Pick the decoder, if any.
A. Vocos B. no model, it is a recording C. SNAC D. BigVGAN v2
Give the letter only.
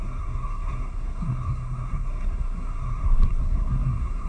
C